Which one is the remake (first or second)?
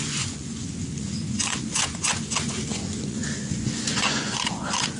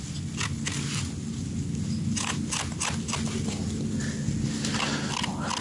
first